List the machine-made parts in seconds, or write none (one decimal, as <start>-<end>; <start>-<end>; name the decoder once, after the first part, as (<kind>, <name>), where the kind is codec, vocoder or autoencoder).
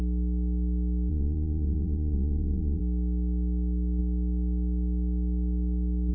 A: 1.1-2.8 (vocoder, Vocos)